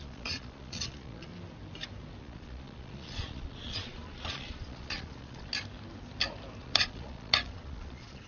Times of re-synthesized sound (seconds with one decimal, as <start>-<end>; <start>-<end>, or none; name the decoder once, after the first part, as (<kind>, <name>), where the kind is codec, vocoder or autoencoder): 0.0-1.3 (vocoder, Vocos); 2.2-5.5; 6.6-8.3